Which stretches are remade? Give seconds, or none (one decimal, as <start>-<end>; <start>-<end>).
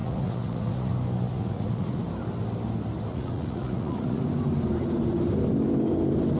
0.0-0.9; 1.3-2.0; 3.1-4.2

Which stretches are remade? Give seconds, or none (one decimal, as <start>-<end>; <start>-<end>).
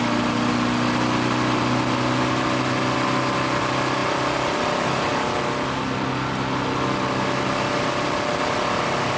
none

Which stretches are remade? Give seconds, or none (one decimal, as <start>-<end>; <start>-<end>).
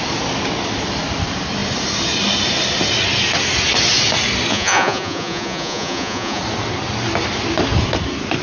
4.5-6.4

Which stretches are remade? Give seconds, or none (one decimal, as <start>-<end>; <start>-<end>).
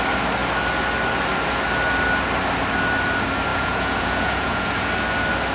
3.5-4.9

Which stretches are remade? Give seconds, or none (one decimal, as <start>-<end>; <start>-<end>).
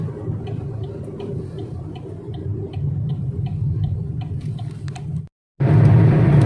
none